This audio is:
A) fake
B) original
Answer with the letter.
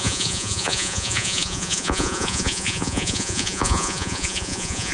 A